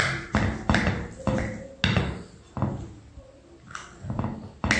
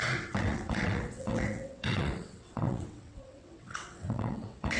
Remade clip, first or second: second